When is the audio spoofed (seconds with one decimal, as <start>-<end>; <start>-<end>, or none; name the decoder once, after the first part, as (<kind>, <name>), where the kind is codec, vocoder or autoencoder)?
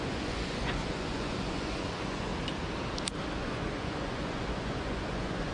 0.0-2.3 (vocoder, Vocos); 3.3-5.5